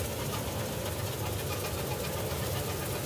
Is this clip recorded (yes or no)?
yes